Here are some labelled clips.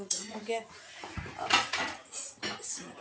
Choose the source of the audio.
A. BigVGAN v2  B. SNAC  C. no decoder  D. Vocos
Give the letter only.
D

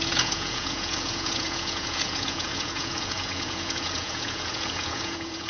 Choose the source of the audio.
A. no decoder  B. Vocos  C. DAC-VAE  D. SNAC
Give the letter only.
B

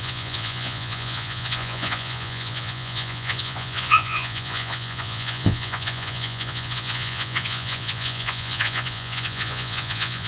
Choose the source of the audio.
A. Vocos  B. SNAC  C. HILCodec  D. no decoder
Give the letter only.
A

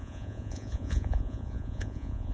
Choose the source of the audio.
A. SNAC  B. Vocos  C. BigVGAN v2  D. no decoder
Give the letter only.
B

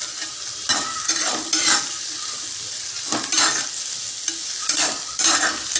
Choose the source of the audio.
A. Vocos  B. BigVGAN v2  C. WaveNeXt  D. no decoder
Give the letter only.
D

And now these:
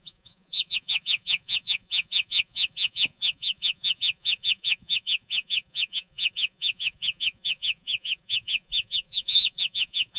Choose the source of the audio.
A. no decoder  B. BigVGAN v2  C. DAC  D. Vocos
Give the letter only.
D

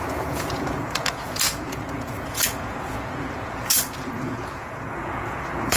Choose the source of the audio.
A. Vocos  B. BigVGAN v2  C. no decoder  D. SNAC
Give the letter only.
A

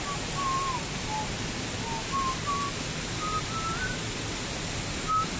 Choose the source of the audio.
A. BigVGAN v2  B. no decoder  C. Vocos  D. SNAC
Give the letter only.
B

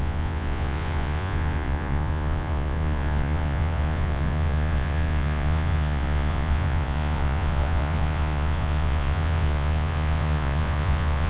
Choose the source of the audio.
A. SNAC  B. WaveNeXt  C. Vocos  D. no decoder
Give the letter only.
C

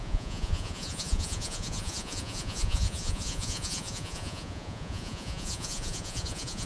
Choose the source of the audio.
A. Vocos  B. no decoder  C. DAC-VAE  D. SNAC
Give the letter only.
A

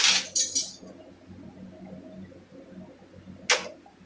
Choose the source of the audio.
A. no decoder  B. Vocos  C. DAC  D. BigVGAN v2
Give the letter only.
A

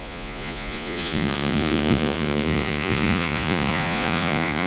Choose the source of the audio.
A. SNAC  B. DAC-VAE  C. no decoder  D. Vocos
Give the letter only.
D